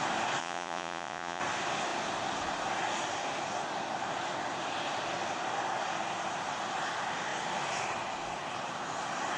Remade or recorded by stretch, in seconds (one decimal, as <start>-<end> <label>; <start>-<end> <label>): 0.0-0.4 recorded; 0.4-1.4 remade; 1.4-9.4 recorded